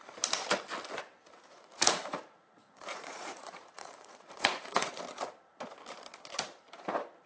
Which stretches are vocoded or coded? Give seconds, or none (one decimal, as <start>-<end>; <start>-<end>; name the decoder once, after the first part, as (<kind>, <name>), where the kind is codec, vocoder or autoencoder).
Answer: 1.5-5.0 (vocoder, Vocos)